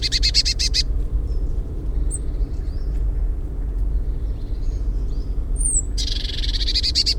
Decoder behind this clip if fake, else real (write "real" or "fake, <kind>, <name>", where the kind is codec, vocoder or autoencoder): fake, vocoder, BigVGAN v2